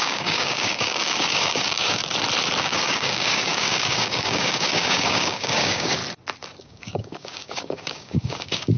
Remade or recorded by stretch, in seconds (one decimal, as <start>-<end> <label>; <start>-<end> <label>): 0.0-2.0 remade; 2.0-2.6 recorded; 2.6-6.0 remade; 6.0-6.6 recorded; 6.6-8.8 remade